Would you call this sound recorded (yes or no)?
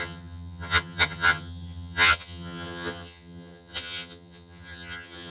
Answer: no